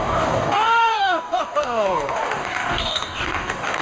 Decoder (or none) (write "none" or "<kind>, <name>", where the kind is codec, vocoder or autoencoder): codec, DAC